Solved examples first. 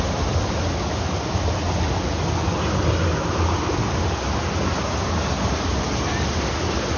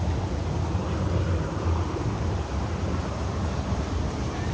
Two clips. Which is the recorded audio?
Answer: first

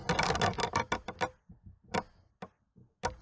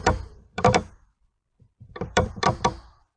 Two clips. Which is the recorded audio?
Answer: first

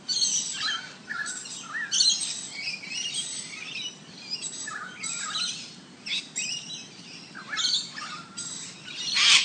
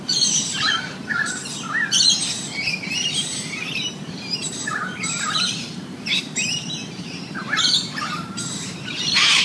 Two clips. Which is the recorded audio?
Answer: first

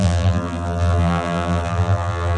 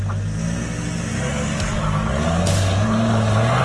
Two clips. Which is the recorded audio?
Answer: second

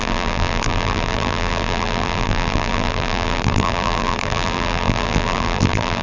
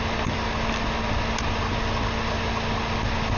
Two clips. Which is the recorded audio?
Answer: second